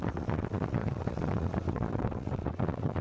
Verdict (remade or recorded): remade